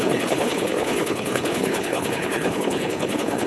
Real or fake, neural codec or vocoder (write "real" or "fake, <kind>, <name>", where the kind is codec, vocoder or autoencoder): fake, codec, HILCodec